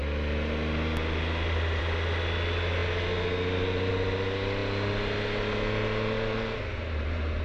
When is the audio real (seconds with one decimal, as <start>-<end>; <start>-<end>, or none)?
0.0-7.4